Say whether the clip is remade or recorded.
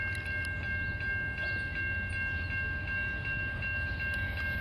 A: recorded